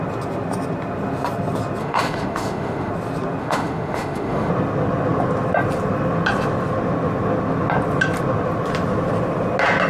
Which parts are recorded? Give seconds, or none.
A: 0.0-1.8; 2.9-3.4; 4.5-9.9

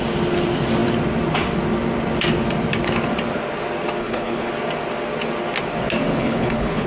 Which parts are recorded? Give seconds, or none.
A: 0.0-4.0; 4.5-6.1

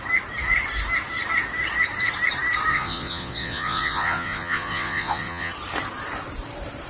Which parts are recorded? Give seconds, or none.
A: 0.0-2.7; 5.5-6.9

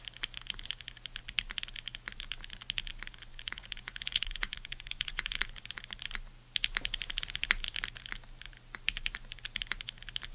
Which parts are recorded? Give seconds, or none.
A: 0.0-3.3; 5.4-10.3

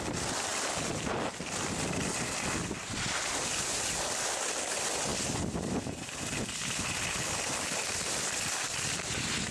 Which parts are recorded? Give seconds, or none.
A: 0.0-9.5

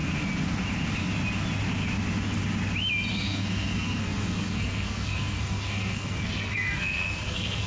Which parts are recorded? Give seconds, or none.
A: 0.0-3.1

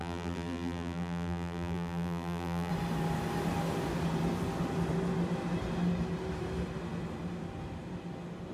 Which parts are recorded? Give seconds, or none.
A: 2.7-8.5

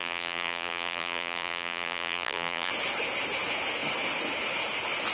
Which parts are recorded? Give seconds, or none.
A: 2.7-5.1